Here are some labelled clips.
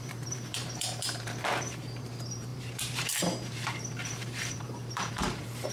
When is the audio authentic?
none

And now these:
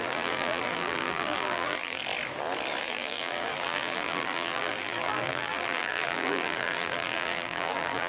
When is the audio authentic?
2.0-2.8

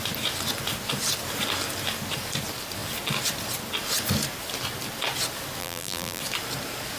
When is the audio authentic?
0.0-5.6; 6.2-7.0

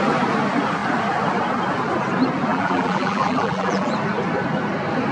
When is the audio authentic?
0.0-2.5; 3.9-5.1

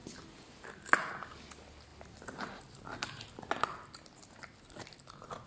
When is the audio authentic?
0.0-1.9; 2.4-2.9; 3.5-5.5

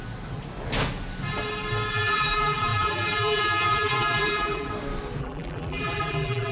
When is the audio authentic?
0.0-1.9; 4.7-5.2

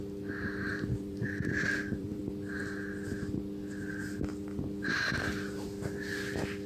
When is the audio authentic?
0.0-0.7; 2.2-6.7